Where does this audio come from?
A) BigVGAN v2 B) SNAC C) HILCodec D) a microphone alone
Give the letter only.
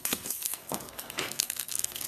B